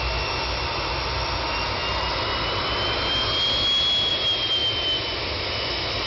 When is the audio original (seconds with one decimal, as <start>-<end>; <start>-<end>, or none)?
0.0-6.1